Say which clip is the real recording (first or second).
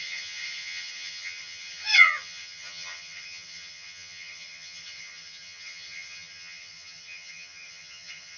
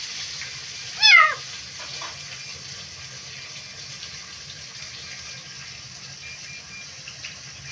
second